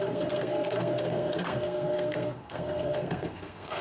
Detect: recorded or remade remade